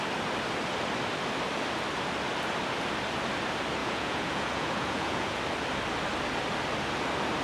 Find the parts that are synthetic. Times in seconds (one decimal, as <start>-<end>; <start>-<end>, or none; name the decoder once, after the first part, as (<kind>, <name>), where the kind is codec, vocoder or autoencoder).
3.8-5.4 (vocoder, Vocos)